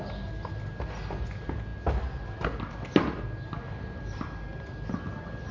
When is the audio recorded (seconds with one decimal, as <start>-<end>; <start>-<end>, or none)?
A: 0.0-5.5